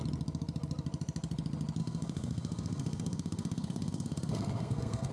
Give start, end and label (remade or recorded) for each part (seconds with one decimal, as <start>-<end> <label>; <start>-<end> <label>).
0.0-1.8 recorded; 1.8-5.1 remade